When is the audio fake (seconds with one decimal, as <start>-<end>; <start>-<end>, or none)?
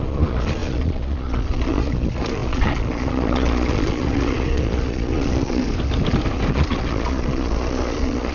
0.0-5.6; 6.5-8.3